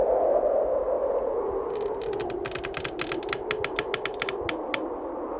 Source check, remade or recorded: recorded